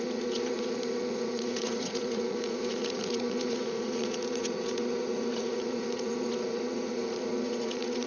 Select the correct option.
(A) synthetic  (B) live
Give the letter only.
A